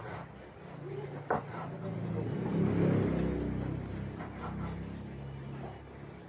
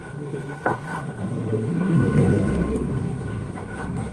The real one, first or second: first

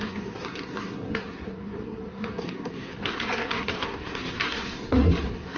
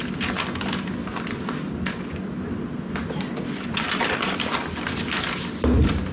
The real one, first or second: second